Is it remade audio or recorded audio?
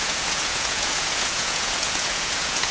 remade